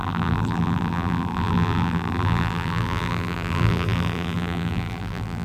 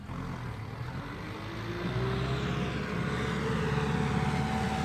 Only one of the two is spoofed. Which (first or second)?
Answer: first